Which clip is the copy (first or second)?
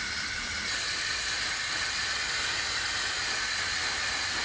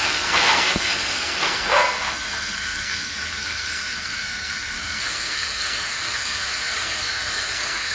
second